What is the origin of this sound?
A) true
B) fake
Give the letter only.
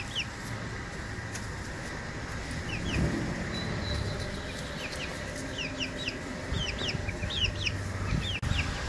A